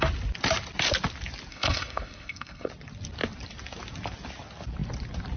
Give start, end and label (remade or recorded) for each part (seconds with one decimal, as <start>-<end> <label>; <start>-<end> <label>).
0.0-1.5 recorded; 1.5-2.7 remade; 2.7-5.4 recorded